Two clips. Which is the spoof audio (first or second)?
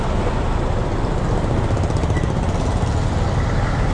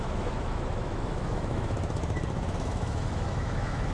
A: second